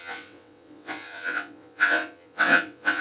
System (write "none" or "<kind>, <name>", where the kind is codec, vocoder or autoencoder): vocoder, WaveNeXt